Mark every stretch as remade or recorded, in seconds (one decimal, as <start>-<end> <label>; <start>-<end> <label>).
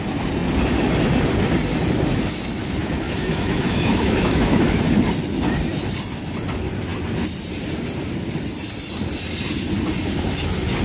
0.0-2.8 recorded; 2.8-4.8 remade; 4.8-10.8 recorded